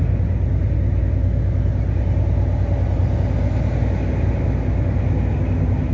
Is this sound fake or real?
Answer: real